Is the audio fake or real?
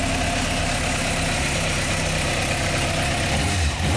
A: real